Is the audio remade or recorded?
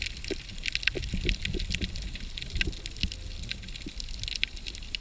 recorded